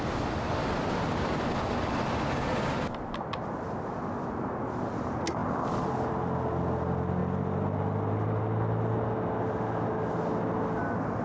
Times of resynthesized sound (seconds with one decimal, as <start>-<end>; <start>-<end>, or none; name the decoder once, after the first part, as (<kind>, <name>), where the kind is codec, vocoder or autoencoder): none